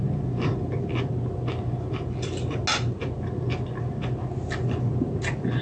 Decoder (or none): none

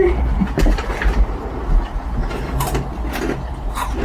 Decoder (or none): none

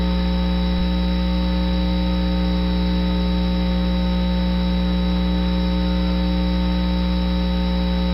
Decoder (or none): none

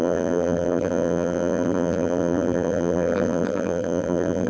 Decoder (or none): vocoder, BigVGAN v2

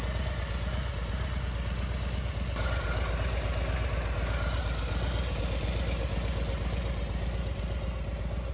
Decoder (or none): none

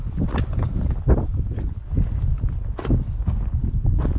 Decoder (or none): none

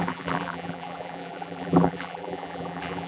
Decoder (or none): vocoder, BigVGAN v2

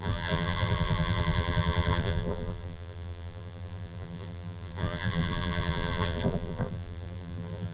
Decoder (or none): vocoder, BigVGAN v2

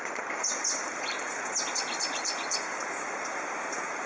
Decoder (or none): none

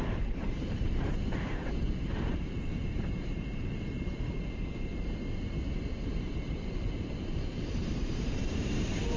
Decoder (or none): vocoder, BigVGAN v2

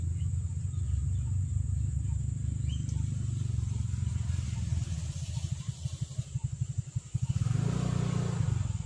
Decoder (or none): none